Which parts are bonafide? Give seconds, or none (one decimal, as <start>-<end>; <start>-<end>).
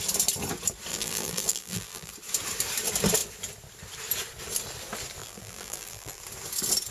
0.0-0.9; 2.1-5.2; 6.2-6.9